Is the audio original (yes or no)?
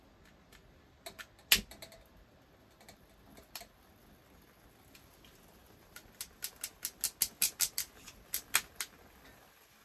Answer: yes